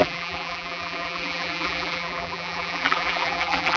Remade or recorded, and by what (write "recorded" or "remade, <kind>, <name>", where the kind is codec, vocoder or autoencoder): remade, vocoder, BigVGAN v2